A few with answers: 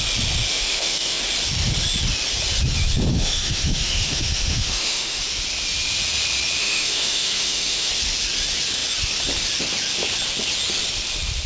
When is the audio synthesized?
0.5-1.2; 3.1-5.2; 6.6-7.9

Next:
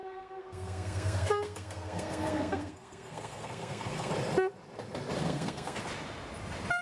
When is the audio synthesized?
0.0-4.1; 5.2-5.8

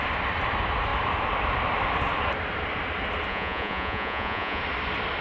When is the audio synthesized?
3.3-4.6

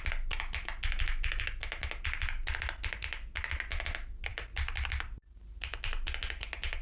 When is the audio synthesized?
none

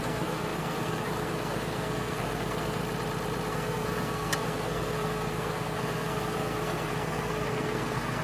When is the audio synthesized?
0.0-2.8; 3.5-8.2

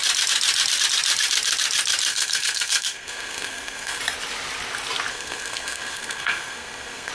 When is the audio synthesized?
2.1-4.0; 5.1-7.1

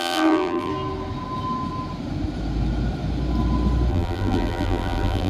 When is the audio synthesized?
0.0-0.7; 3.9-5.3

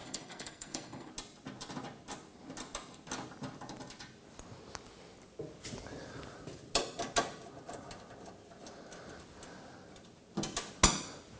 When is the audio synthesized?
0.0-1.1